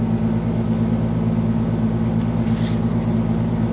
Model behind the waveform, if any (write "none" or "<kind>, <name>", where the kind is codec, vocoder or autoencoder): none